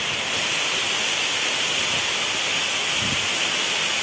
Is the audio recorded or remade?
recorded